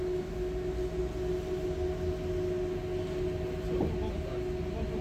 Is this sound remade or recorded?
recorded